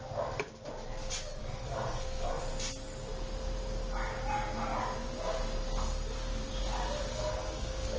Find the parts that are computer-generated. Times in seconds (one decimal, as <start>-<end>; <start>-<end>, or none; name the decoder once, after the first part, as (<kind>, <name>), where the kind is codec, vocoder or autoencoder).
1.4-2.4 (codec, SNAC); 7.1-8.0